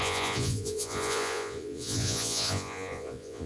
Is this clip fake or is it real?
fake